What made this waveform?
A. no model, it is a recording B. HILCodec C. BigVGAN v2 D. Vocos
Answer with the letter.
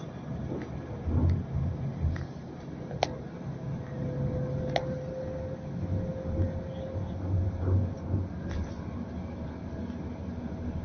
A